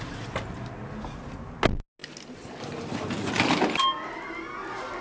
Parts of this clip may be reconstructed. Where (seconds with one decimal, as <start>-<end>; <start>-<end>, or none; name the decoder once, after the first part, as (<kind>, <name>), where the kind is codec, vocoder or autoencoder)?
none

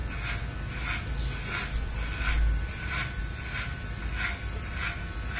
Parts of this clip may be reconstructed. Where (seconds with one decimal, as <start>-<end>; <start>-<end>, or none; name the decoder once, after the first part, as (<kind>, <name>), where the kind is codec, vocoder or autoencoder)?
none

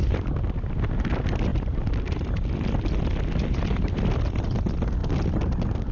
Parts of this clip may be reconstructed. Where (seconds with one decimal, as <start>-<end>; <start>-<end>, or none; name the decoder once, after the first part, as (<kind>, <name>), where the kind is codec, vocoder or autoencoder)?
0.0-1.0 (vocoder, BigVGAN v2); 1.5-4.4

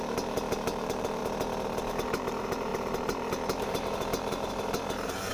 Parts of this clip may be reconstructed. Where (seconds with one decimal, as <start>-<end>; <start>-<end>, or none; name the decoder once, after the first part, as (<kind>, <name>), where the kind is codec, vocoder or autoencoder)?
0.0-1.2 (vocoder, BigVGAN v2); 1.9-5.3

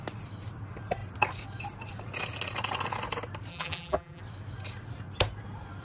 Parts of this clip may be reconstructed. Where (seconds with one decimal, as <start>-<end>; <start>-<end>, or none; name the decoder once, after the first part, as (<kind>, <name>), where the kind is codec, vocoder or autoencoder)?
3.5-4.2 (vocoder, BigVGAN v2)

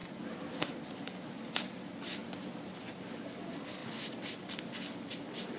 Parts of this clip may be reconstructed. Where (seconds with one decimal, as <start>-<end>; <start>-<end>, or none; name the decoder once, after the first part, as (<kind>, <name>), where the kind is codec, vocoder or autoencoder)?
none